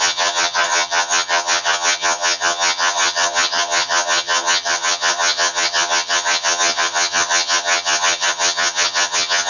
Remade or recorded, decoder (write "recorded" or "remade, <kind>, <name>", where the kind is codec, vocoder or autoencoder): remade, vocoder, HiFi-GAN